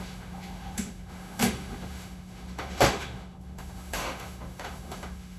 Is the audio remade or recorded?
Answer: remade